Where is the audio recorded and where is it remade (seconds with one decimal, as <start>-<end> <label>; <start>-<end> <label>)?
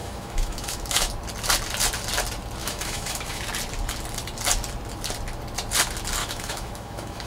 0.0-1.1 remade; 1.1-2.6 recorded; 2.6-3.4 remade; 3.4-6.2 recorded; 6.2-7.3 remade